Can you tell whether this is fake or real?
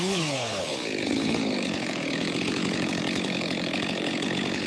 fake